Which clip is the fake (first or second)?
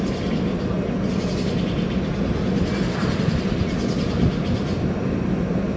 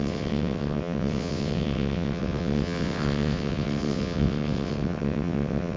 second